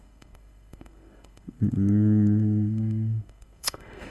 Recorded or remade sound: remade